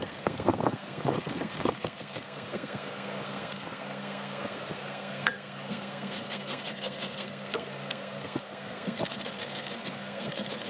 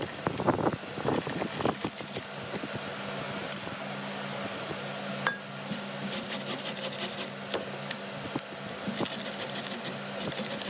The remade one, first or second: first